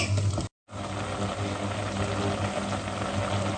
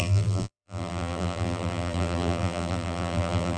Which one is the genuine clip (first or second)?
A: first